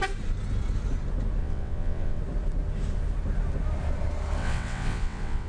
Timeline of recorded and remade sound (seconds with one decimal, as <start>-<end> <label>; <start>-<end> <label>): 0.0-1.4 recorded; 1.4-2.2 remade; 2.2-4.4 recorded; 4.4-5.5 remade